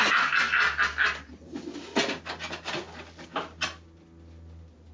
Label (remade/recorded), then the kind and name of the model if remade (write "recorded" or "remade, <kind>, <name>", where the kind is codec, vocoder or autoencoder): recorded